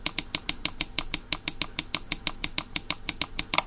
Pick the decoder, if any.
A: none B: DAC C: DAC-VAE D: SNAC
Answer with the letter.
A